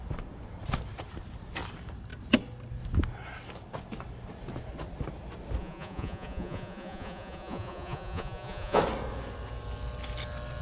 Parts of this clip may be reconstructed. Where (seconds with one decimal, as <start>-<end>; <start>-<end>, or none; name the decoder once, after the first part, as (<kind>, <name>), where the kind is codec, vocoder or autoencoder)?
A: 5.6-8.8 (vocoder, Vocos)